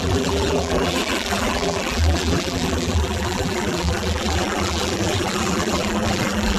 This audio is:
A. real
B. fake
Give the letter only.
B